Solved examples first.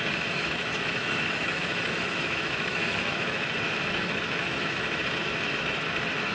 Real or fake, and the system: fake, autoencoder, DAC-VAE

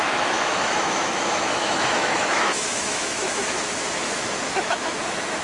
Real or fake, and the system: fake, autoencoder, DAC-VAE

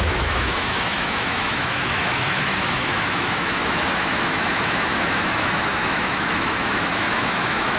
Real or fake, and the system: fake, autoencoder, DAC-VAE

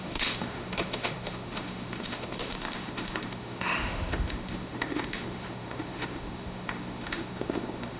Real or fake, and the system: fake, autoencoder, DAC-VAE